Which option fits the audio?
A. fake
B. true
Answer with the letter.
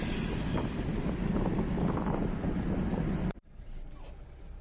B